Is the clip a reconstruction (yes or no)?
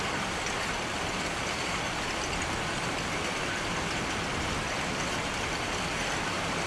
no